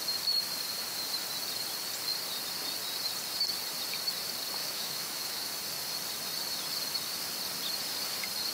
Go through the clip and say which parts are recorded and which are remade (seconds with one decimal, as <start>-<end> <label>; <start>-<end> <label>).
0.0-4.6 recorded; 4.6-5.5 remade; 5.5-8.5 recorded